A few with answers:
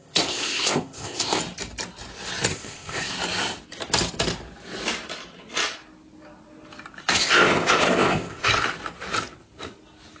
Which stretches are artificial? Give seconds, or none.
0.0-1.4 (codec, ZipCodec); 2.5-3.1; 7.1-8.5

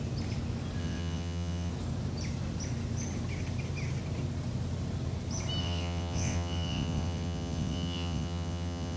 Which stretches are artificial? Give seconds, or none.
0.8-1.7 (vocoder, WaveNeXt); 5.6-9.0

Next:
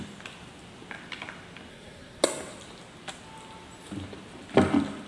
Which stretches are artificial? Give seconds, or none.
1.7-2.2 (codec, SNAC)

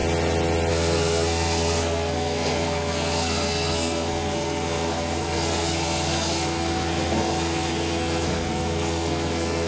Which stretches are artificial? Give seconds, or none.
0.7-9.7 (codec, SNAC)

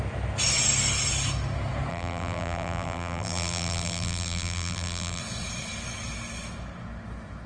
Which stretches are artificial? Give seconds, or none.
1.9-5.2 (vocoder, BigVGAN v2)